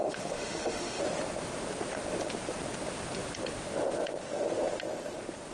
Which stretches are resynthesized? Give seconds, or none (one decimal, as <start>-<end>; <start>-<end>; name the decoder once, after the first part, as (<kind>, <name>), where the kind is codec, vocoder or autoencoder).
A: 0.0-1.0 (autoencoder, DAC-VAE)